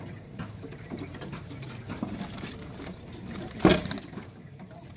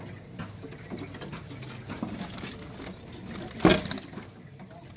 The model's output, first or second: first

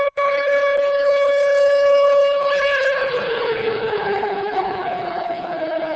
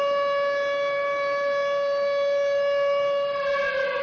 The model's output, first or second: first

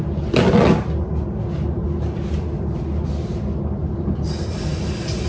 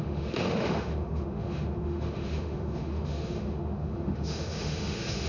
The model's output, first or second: second